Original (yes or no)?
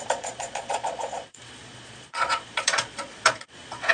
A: no